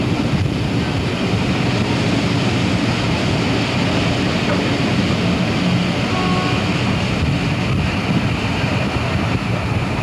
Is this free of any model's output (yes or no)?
yes